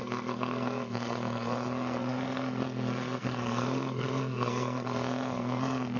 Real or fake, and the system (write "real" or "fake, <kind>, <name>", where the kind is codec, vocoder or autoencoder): fake, codec, SNAC